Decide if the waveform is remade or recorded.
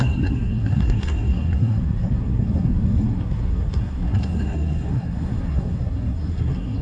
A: remade